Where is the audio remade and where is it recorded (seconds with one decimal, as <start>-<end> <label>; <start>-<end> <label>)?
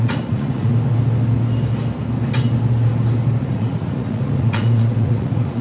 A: 0.0-0.7 remade; 0.7-3.4 recorded; 3.4-5.6 remade